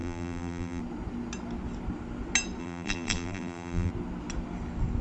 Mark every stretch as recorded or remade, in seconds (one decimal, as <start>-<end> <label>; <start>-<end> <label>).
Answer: 0.0-0.8 remade; 0.8-2.6 recorded; 2.6-3.9 remade; 3.9-5.0 recorded